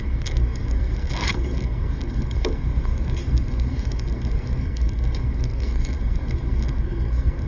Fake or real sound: fake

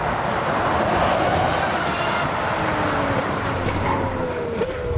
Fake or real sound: real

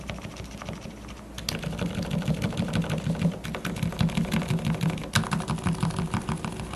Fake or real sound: real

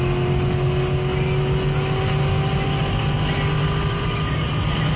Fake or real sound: real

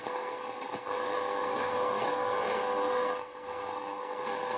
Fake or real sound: fake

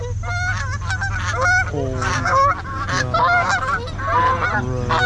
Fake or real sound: real